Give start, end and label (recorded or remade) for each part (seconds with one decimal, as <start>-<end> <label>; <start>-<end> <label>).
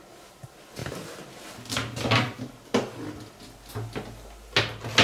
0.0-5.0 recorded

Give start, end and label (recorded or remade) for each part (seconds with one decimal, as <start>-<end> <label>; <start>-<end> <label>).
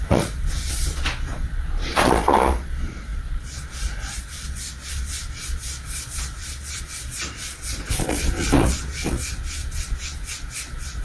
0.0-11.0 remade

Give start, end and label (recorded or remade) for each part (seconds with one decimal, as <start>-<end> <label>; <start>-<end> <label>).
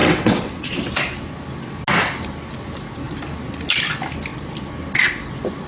0.0-0.7 remade; 0.7-5.7 recorded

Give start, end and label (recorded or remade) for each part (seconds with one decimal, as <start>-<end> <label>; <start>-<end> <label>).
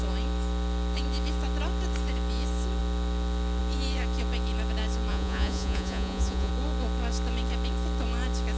0.0-5.1 recorded; 5.1-6.5 remade; 6.5-8.6 recorded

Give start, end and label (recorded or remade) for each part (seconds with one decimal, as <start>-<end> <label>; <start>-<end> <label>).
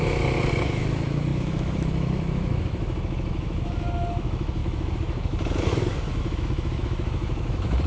0.0-7.9 remade